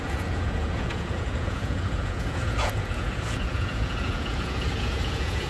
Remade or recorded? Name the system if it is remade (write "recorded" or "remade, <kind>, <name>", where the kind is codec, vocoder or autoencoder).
remade, vocoder, Vocos